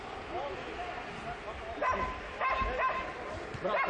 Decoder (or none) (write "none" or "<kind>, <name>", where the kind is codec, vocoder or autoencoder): none